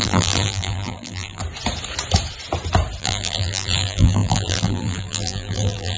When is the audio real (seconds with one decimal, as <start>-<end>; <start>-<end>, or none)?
1.4-3.0